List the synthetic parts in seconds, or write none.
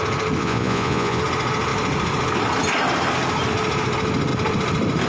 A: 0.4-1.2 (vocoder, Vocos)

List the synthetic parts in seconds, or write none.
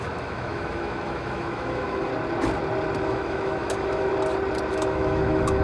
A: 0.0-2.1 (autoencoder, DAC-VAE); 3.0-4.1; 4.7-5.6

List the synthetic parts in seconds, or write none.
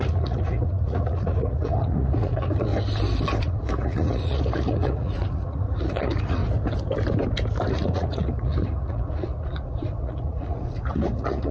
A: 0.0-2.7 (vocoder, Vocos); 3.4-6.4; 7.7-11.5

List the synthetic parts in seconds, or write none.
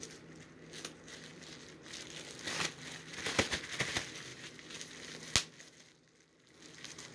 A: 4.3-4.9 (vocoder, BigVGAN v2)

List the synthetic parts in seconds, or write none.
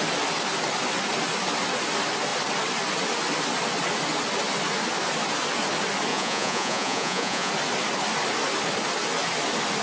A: 6.1-7.5 (vocoder, Vocos)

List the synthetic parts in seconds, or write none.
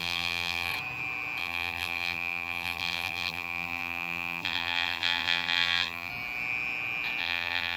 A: 0.0-0.7 (vocoder, BigVGAN v2); 1.4-6.1; 7.2-7.8